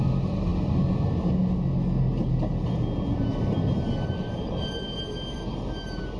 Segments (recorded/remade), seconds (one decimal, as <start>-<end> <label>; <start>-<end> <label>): 0.0-6.2 recorded